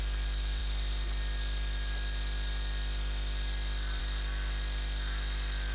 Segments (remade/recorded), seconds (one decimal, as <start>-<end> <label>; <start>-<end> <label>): 0.0-5.7 recorded